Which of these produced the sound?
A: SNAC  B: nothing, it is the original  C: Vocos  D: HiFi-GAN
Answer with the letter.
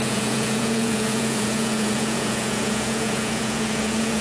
C